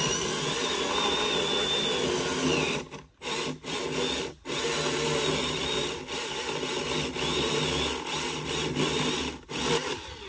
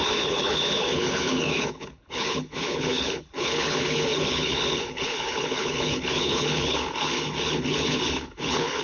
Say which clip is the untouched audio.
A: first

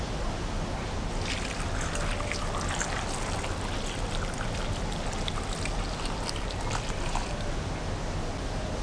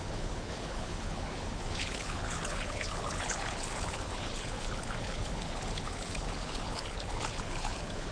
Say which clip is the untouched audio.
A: first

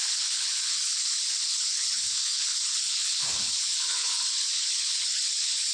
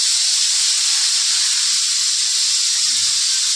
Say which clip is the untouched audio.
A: second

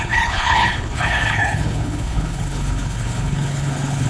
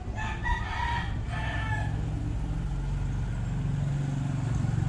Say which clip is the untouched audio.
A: second